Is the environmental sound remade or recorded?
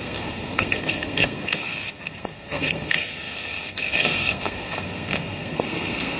remade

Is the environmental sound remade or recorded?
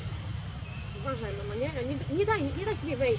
recorded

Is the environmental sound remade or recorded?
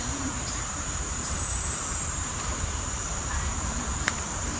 remade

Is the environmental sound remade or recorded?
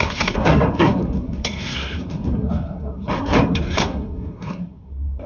remade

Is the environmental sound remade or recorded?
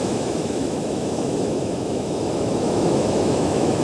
remade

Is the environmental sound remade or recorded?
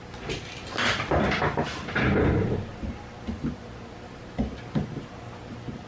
recorded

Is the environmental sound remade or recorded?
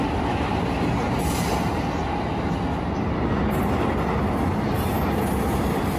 recorded